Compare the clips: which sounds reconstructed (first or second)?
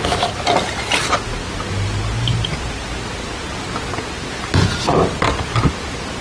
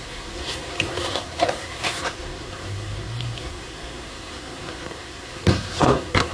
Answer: second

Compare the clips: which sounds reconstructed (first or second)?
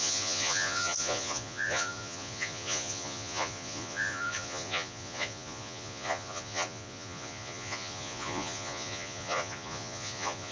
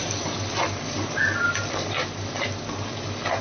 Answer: first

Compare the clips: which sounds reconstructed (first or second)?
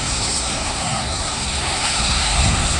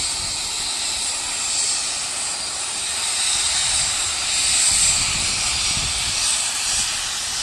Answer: first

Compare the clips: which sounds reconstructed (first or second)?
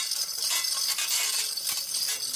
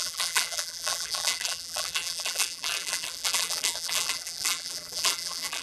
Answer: second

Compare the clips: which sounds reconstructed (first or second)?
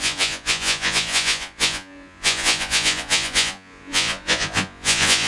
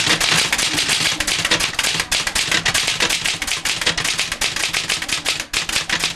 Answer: first